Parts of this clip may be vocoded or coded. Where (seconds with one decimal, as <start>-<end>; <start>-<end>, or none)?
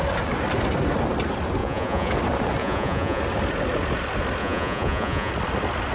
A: 1.6-2.1; 2.6-3.2; 4.4-5.3